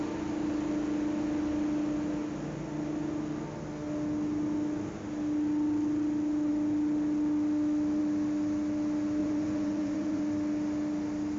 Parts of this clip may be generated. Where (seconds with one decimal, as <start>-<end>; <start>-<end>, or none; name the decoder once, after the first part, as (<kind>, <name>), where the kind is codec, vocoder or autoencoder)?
9.2-10.2 (vocoder, Vocos)